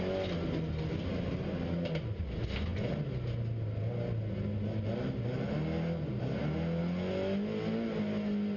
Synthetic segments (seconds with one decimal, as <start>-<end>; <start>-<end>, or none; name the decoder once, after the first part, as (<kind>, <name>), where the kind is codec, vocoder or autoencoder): none